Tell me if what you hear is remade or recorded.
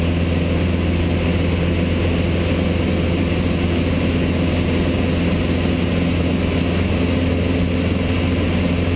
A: recorded